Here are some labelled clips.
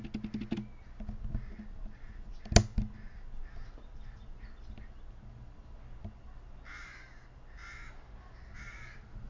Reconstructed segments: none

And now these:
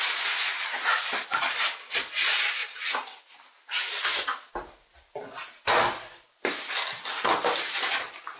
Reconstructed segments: none

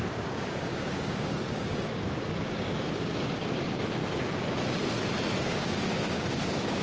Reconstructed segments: 0.0-4.0 (codec, DAC); 5.5-6.8

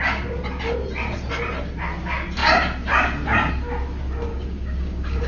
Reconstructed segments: 4.3-5.3 (codec, DAC)

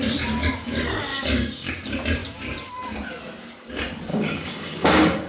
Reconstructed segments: 1.1-1.7 (codec, DAC); 4.1-5.3

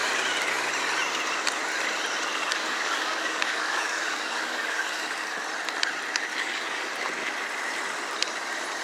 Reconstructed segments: 2.3-5.2 (codec, DAC); 6.3-6.9

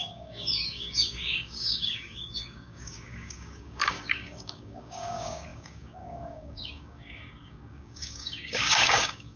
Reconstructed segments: 0.0-9.4 (codec, DAC)